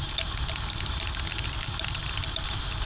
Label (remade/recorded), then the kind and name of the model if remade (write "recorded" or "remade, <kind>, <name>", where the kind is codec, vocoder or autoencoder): recorded